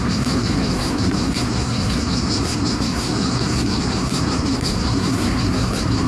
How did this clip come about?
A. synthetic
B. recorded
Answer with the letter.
A